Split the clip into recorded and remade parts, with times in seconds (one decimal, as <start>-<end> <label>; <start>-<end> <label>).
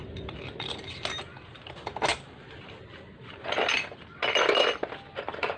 0.0-5.6 recorded